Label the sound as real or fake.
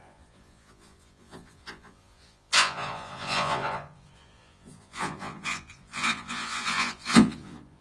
fake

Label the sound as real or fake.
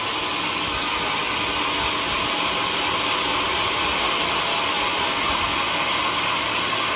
real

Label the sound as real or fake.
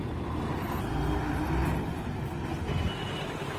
real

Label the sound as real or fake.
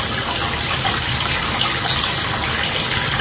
real